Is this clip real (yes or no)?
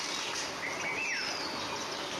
yes